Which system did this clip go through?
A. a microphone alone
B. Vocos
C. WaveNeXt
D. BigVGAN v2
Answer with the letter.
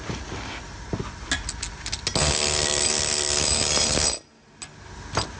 A